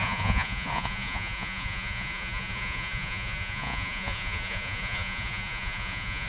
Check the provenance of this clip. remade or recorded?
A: remade